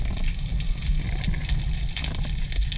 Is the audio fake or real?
real